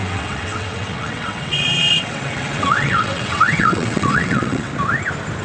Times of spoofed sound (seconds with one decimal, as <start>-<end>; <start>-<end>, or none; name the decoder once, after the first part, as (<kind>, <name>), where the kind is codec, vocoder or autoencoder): 0.0-4.7 (vocoder, WaveNeXt)